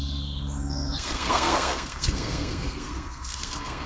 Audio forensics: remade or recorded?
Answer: remade